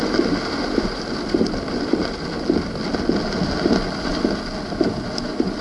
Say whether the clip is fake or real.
real